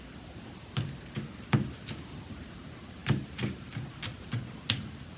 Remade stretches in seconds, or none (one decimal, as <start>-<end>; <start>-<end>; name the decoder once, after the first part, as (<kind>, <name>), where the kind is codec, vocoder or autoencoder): none